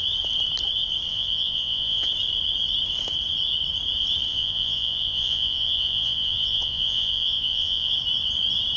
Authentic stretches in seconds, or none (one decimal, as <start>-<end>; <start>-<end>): 0.0-1.1; 2.1-4.3; 7.9-8.8